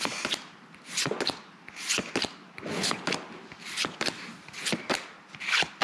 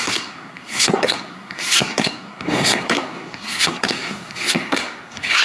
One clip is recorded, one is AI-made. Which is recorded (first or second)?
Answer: first